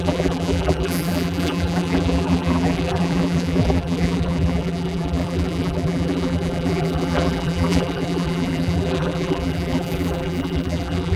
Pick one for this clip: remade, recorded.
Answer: remade